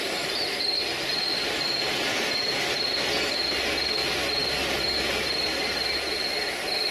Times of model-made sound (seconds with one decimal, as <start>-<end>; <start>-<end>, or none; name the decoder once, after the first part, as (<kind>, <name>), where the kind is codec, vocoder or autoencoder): none